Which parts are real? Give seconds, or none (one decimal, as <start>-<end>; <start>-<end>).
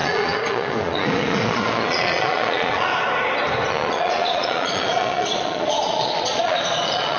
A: 2.9-3.7